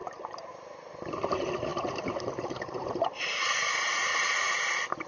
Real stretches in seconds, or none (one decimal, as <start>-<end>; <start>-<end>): 0.5-1.7; 3.2-5.1